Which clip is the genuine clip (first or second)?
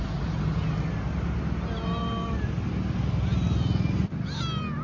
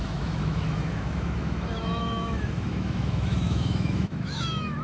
first